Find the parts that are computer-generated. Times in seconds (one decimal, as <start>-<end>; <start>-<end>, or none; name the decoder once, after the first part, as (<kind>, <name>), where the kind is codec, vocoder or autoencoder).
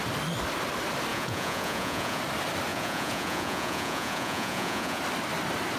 1.1-2.2 (vocoder, Vocos); 2.7-5.0